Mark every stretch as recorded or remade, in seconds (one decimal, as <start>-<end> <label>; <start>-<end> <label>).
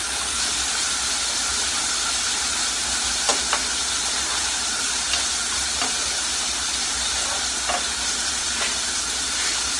0.0-9.8 recorded